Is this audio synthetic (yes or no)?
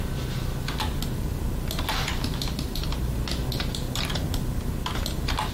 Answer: no